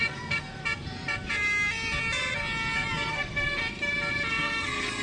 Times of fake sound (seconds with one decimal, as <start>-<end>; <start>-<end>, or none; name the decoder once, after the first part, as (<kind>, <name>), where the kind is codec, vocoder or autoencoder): 0.0-0.6 (codec, SNAC); 3.1-3.6; 4.3-5.0